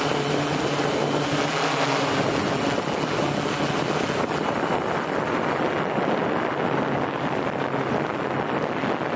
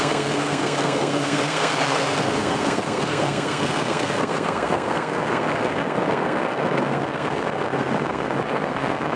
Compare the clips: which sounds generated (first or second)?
second